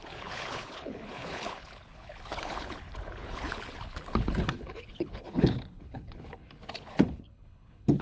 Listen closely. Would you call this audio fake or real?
fake